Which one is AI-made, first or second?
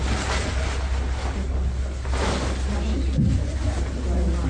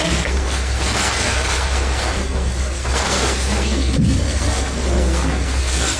second